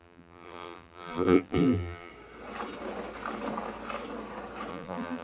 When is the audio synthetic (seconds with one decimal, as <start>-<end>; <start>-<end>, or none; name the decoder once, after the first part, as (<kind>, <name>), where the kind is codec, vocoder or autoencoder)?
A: 0.0-2.1 (vocoder, BigVGAN v2); 4.7-5.2